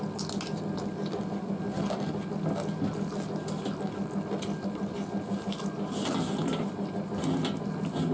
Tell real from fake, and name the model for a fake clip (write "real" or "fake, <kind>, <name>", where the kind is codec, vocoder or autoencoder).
real